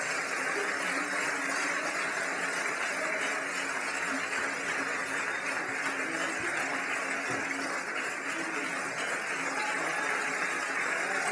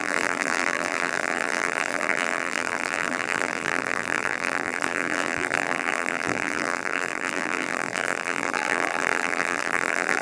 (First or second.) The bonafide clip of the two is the first